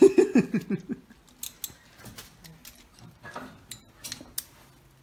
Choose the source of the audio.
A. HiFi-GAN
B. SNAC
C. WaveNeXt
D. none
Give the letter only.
D